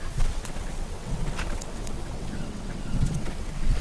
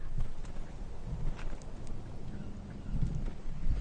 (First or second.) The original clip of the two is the second